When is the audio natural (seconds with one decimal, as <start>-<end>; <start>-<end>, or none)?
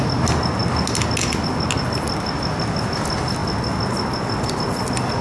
0.0-5.2